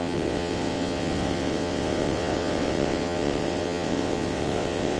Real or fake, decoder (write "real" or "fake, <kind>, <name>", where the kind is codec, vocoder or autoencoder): fake, vocoder, WaveNeXt